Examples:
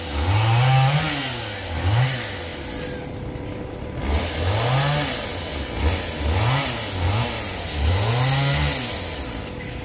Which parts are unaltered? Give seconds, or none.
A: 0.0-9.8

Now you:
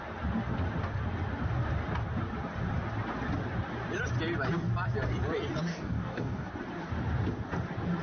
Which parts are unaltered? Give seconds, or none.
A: 0.0-5.7; 6.5-8.0

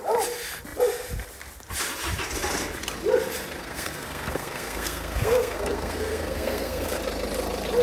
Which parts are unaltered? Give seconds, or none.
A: 0.0-3.6; 7.0-7.8